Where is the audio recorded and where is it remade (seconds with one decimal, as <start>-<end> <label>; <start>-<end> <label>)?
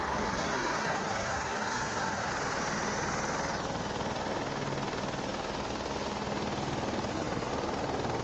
0.0-2.3 remade; 2.3-7.1 recorded; 7.1-7.5 remade; 7.5-8.2 recorded